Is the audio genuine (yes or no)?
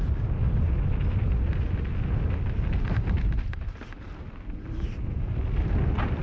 yes